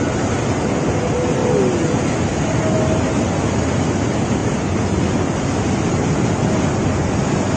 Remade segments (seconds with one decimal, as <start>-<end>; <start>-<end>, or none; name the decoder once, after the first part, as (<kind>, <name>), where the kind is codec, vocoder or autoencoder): none